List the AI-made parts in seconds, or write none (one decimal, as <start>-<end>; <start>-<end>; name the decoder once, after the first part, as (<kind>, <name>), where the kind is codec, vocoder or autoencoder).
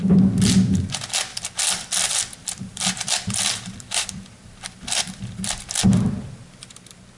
1.3-5.5 (vocoder, BigVGAN v2)